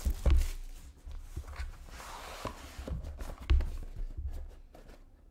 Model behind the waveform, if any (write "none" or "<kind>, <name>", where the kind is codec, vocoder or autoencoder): none